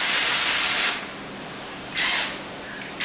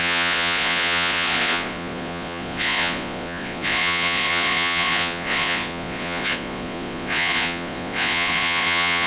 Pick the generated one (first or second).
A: second